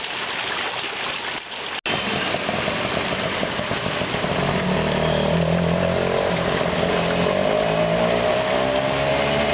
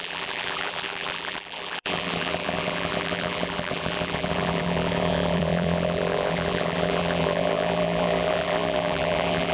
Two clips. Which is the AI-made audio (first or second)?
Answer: second